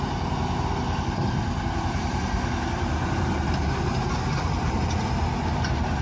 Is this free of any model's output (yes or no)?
yes